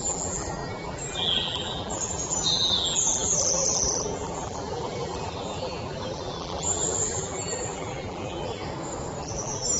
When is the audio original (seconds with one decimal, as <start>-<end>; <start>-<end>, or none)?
8.6-9.2